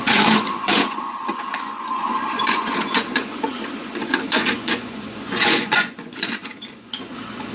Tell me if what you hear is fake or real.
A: fake